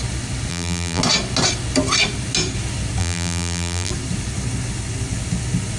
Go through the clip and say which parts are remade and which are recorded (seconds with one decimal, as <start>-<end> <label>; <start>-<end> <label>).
0.0-0.5 recorded; 0.5-1.0 remade; 1.0-3.0 recorded; 3.0-3.9 remade; 3.9-5.8 recorded